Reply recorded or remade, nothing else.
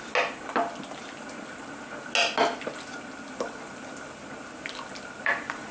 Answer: recorded